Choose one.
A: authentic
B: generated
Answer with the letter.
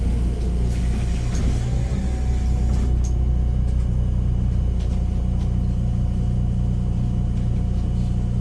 A